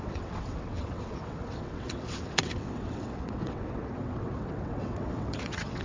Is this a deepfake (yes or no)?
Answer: yes